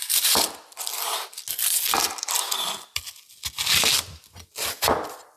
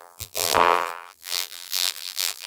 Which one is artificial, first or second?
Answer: second